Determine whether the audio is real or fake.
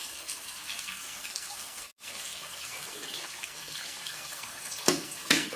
fake